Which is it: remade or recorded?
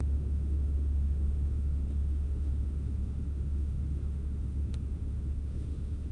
remade